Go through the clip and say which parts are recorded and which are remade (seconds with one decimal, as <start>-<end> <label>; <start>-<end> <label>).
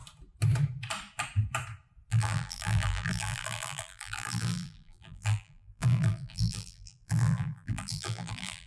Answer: 0.0-2.1 recorded; 2.1-8.7 remade